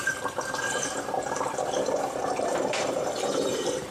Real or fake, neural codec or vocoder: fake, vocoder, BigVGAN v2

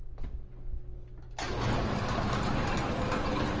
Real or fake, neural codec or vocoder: real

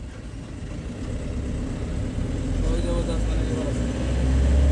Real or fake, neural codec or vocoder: real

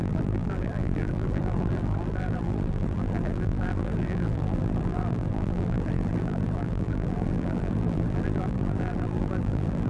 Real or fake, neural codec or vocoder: fake, vocoder, BigVGAN v2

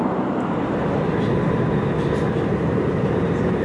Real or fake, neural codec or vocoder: fake, vocoder, BigVGAN v2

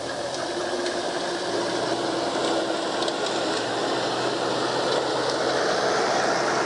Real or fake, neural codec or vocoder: real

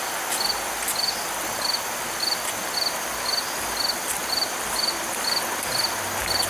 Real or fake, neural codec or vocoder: real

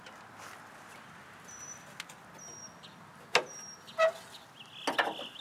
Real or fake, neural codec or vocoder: real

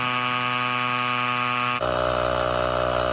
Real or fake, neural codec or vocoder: real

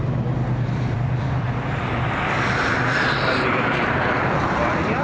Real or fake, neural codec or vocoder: fake, vocoder, BigVGAN v2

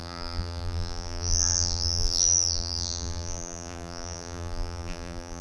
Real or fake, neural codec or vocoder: fake, vocoder, BigVGAN v2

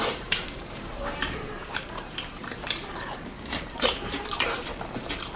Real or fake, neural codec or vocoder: fake, vocoder, BigVGAN v2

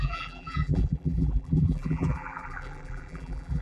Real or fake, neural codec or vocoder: fake, vocoder, BigVGAN v2